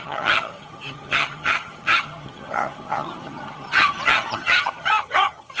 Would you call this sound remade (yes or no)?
yes